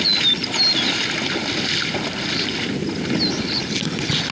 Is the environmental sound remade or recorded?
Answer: recorded